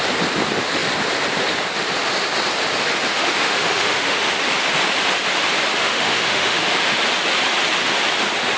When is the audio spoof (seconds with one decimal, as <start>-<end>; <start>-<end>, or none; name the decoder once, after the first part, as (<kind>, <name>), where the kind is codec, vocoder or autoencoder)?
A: 3.1-4.3 (autoencoder, DAC-VAE); 5.8-7.0